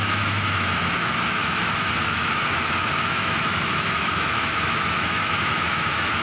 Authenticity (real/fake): fake